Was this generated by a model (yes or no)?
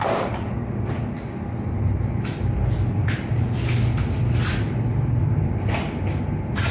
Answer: no